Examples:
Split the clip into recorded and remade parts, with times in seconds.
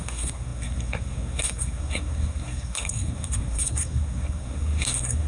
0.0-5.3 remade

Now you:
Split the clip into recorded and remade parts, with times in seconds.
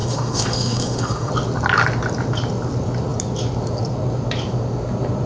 0.0-1.3 remade; 1.3-5.3 recorded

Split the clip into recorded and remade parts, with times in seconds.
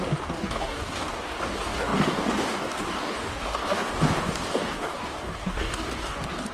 0.0-6.5 remade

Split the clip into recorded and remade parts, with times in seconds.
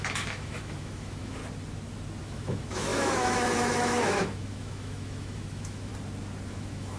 0.0-1.4 remade; 1.4-2.2 recorded; 2.2-5.9 remade; 5.9-6.5 recorded; 6.5-7.0 remade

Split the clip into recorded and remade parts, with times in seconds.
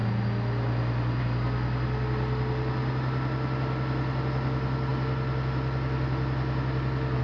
0.0-7.2 recorded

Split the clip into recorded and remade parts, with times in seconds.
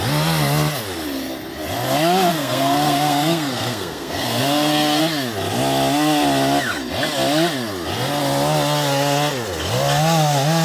0.0-2.3 recorded; 2.3-5.0 remade; 5.0-10.6 recorded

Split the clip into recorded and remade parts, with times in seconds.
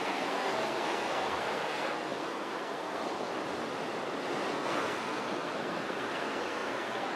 0.0-3.3 remade; 3.3-4.5 recorded; 4.5-7.2 remade